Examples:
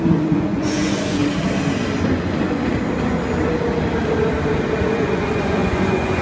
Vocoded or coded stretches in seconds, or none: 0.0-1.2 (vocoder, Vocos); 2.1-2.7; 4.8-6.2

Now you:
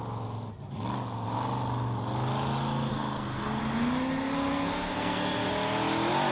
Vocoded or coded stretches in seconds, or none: 2.9-3.6 (codec, SNAC); 4.5-5.5

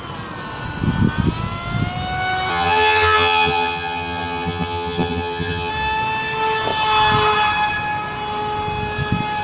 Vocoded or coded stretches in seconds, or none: 2.5-5.7 (vocoder, HiFi-GAN)

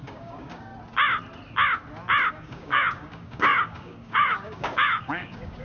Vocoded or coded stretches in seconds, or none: 0.0-0.7 (codec, DAC); 2.3-5.6

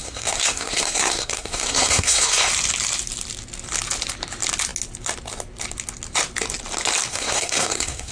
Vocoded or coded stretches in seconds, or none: 0.0-2.5 (codec, SNAC); 7.1-8.1

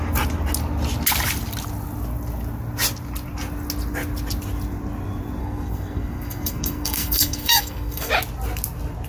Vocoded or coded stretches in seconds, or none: 5.4-8.1 (codec, SNAC)